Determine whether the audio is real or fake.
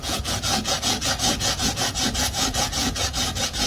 fake